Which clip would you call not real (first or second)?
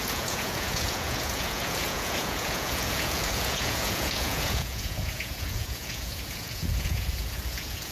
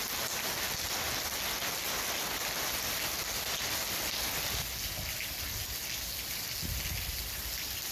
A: first